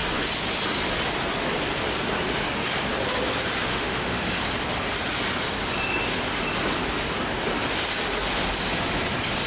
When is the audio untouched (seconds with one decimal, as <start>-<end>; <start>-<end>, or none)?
0.0-3.7; 4.4-9.5